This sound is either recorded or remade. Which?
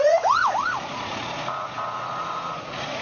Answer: remade